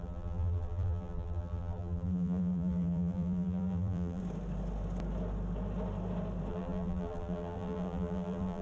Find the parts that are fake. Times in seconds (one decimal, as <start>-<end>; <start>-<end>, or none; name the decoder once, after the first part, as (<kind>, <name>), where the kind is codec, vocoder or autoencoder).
0.0-4.2 (vocoder, BigVGAN v2); 6.5-8.6